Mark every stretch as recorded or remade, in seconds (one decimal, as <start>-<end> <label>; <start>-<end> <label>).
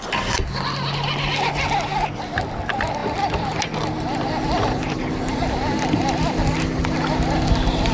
0.0-7.9 recorded